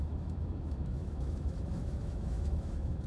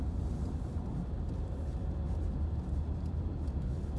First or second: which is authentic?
second